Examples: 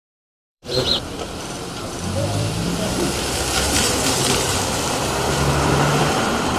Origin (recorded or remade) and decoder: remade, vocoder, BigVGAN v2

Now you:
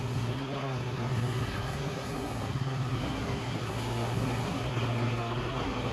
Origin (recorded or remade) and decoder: remade, codec, SNAC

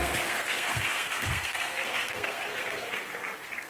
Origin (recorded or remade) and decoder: remade, codec, SNAC